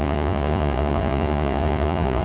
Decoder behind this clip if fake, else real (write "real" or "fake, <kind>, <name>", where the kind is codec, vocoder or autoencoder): fake, vocoder, Vocos